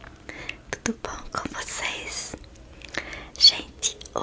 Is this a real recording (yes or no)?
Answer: yes